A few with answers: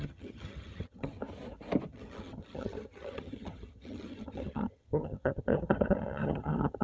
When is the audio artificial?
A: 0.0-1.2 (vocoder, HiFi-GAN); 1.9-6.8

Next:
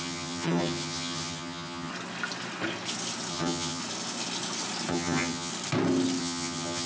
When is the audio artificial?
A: 0.0-1.9 (vocoder, HiFi-GAN); 3.3-3.8; 4.9-5.5; 6.2-6.9

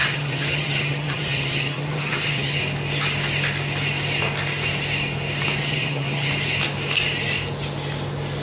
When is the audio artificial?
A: 0.0-2.6 (vocoder, HiFi-GAN); 5.6-6.3

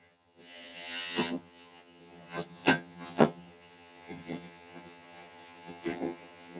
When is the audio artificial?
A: 0.0-6.6 (vocoder, HiFi-GAN)

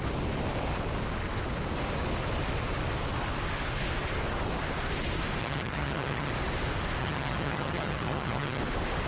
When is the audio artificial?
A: 5.4-6.3 (vocoder, HiFi-GAN); 7.0-8.6

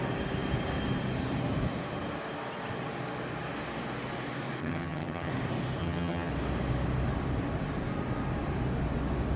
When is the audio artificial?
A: 4.6-5.3 (vocoder, HiFi-GAN); 5.8-6.3